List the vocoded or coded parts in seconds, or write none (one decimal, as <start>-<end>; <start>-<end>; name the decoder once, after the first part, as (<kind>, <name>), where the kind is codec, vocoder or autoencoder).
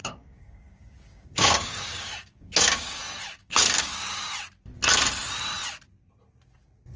0.0-3.0 (codec, DAC); 3.4-4.3